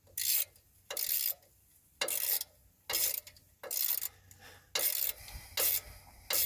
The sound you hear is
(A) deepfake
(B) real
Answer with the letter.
B